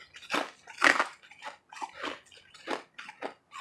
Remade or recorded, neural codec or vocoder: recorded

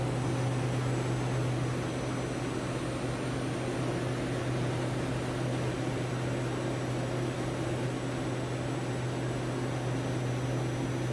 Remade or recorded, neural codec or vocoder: recorded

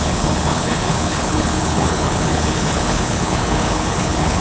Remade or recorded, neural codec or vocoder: remade, codec, HILCodec